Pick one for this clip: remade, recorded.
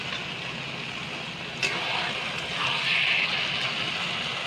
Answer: recorded